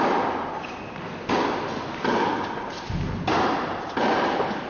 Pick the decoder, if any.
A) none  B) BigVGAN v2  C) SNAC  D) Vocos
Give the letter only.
A